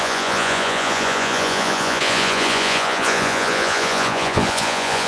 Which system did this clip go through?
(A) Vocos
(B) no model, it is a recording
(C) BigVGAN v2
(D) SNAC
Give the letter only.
A